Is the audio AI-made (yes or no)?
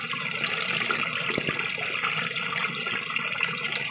no